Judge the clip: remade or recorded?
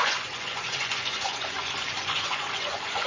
remade